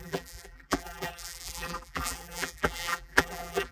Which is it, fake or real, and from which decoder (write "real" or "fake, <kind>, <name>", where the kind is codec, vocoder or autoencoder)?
fake, vocoder, BigVGAN v2